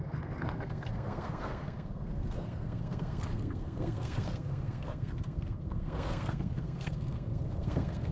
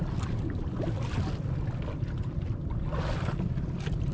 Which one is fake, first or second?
first